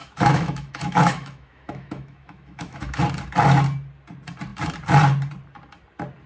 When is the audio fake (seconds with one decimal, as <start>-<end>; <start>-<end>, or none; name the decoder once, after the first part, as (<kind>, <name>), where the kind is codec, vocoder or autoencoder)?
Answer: 0.0-3.0 (autoencoder, DAC-VAE)